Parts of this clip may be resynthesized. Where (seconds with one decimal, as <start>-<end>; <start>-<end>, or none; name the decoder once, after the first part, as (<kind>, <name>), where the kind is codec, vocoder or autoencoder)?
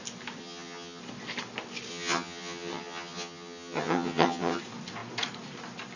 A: 0.4-1.0 (vocoder, HiFi-GAN); 1.9-4.6